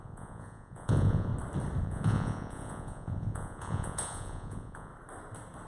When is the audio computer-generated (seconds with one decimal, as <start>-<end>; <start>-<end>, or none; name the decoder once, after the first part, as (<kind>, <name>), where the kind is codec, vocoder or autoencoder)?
0.0-1.3 (vocoder, Vocos); 1.8-4.9